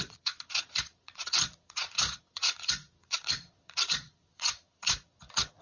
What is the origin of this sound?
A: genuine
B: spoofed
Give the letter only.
B